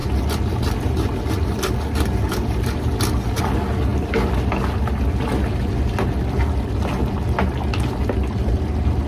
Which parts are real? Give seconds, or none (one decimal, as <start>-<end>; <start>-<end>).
0.0-9.1